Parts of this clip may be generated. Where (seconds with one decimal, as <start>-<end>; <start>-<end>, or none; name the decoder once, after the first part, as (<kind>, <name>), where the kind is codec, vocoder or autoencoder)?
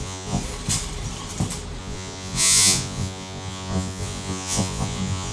0.0-0.4 (vocoder, Vocos); 1.8-5.3